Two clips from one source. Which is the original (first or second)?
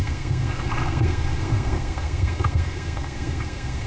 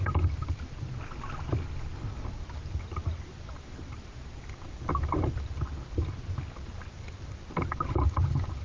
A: second